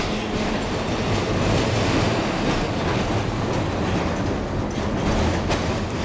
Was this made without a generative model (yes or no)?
yes